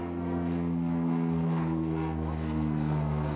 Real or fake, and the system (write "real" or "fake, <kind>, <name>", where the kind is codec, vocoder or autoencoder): fake, codec, SNAC